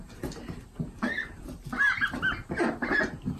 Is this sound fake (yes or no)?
no